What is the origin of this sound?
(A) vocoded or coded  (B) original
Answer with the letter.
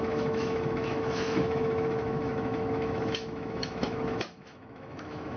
A